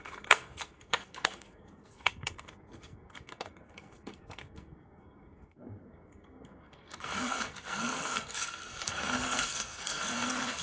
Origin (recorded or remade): remade